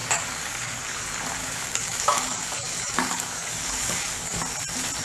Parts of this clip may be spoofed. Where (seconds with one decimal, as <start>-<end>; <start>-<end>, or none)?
0.0-0.8; 1.4-4.4